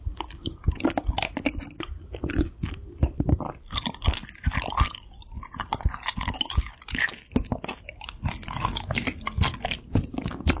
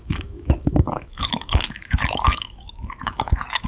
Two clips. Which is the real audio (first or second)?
first